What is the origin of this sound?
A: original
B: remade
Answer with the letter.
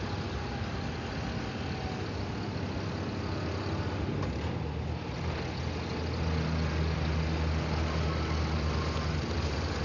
A